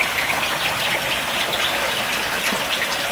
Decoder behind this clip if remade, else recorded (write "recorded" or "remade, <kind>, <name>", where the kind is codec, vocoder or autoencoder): recorded